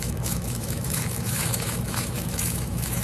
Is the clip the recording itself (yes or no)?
no